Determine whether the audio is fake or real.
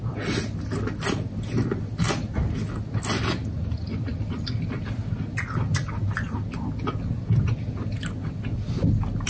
real